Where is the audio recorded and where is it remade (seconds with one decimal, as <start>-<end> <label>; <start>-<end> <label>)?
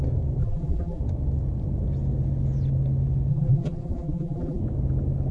0.0-0.4 recorded; 0.4-1.0 remade; 1.0-3.3 recorded; 3.3-4.6 remade; 4.6-5.3 recorded